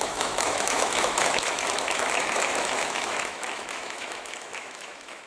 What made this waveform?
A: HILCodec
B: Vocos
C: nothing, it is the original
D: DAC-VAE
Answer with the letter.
D